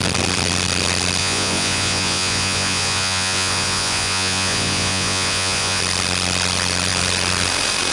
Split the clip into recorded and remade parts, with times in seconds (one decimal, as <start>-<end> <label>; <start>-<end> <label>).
0.0-1.2 recorded; 1.2-5.8 remade; 5.8-7.9 recorded